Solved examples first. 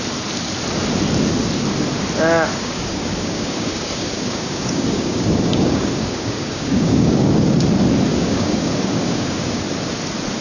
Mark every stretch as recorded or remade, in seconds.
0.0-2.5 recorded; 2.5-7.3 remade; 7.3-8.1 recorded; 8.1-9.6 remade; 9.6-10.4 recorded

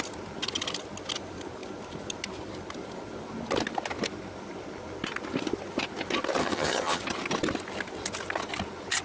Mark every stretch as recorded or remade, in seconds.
0.0-6.4 recorded; 6.4-7.0 remade; 7.0-9.0 recorded

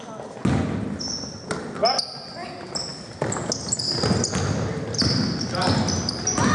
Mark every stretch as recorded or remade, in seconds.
0.0-6.5 recorded